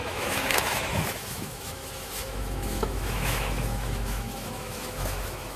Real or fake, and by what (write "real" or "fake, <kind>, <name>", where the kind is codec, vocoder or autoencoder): fake, autoencoder, DAC-VAE